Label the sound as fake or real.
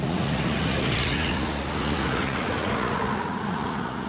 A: fake